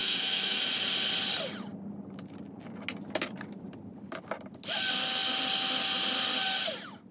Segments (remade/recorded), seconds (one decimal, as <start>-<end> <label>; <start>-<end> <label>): 0.0-0.6 remade; 0.6-7.1 recorded